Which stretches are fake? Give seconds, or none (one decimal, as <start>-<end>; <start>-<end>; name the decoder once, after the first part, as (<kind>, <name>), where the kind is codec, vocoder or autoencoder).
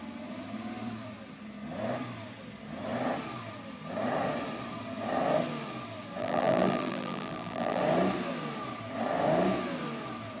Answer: 6.2-7.8 (vocoder, BigVGAN v2)